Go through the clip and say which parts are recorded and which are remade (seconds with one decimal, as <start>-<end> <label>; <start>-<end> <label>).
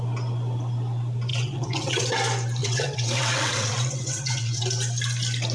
0.0-1.3 recorded; 1.3-2.0 remade; 2.0-2.6 recorded; 2.6-4.6 remade; 4.6-5.5 recorded